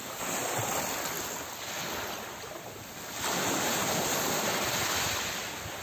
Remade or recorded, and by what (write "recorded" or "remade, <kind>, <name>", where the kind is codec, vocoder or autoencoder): recorded